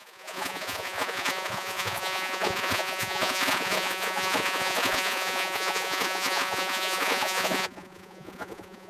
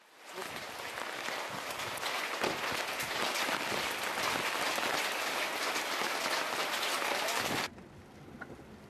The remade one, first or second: first